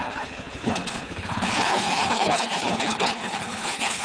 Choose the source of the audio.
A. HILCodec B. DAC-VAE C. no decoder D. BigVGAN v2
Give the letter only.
A